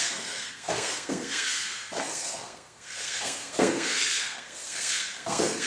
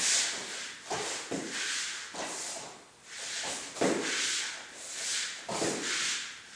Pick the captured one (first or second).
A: second